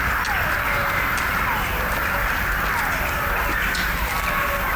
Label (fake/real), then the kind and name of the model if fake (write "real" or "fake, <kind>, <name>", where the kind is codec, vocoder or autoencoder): real